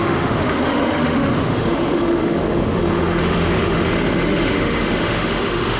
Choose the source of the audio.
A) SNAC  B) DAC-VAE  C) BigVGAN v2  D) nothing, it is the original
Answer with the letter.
B